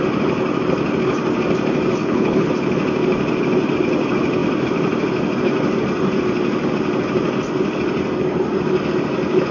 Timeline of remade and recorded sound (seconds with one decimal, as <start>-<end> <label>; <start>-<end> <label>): 0.0-2.0 recorded; 2.0-2.5 remade; 2.5-9.5 recorded